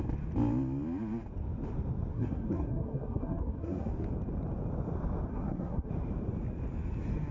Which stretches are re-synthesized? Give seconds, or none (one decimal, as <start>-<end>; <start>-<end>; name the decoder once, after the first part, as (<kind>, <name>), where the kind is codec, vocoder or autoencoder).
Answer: 2.1-3.9 (codec, SNAC); 5.3-5.9